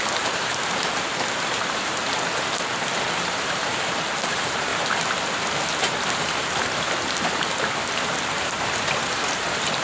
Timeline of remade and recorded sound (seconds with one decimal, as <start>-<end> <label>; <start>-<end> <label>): 0.0-2.0 remade; 2.0-3.1 recorded; 3.1-4.7 remade; 4.7-7.9 recorded; 7.9-9.8 remade